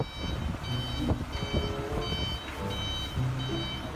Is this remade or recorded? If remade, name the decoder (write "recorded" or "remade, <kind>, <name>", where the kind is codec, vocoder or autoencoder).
recorded